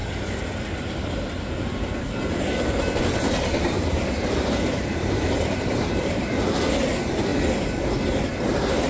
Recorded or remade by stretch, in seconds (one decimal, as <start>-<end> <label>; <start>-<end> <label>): 0.0-3.5 recorded; 3.5-6.6 remade; 6.6-8.9 recorded